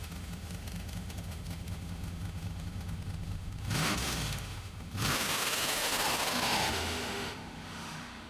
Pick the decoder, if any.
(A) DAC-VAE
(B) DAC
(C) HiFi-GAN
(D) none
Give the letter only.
A